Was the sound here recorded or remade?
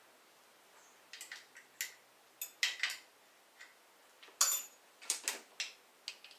recorded